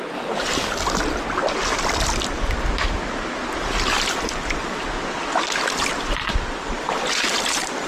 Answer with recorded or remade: recorded